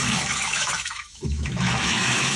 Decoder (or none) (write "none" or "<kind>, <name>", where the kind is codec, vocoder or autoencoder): autoencoder, DAC-VAE